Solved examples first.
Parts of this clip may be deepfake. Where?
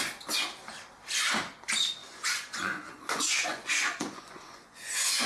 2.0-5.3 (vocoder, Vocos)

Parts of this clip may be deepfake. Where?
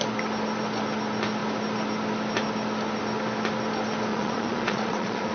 4.1-5.3 (vocoder, Vocos)